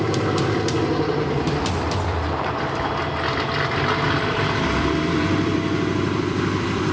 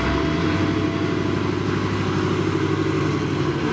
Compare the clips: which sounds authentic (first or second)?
second